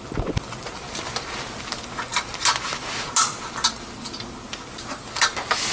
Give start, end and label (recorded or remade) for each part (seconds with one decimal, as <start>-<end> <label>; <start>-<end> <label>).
0.0-5.7 recorded